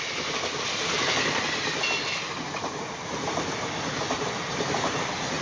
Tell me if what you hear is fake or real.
real